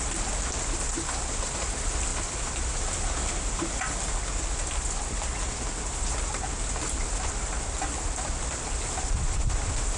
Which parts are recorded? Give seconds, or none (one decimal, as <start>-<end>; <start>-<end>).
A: 0.0-10.0

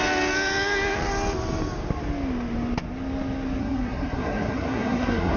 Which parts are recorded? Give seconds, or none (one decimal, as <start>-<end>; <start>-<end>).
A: 0.0-3.6